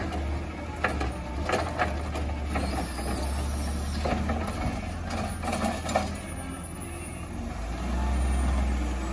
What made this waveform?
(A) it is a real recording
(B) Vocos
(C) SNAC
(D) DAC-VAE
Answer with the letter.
A